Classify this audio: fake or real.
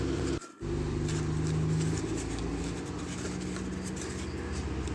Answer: real